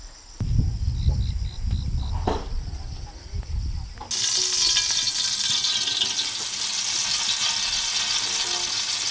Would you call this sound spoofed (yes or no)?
no